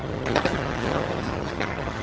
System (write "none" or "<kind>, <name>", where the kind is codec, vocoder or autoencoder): vocoder, HiFi-GAN